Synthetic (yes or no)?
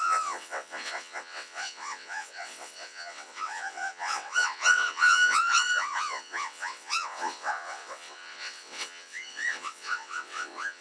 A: yes